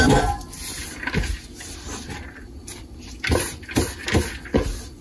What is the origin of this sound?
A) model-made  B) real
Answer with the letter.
B